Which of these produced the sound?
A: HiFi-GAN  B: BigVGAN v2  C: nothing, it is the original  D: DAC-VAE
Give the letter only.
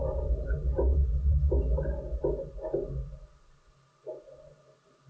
C